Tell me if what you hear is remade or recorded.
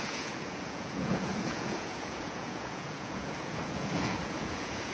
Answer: remade